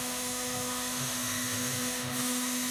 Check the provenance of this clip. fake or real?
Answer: fake